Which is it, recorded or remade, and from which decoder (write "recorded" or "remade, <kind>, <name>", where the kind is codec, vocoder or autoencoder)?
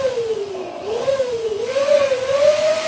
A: remade, vocoder, Vocos